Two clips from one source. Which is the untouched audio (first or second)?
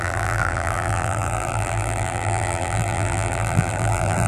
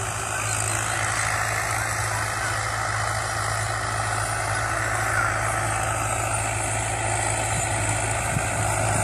second